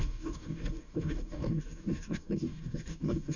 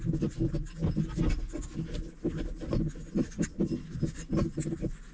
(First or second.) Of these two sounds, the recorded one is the second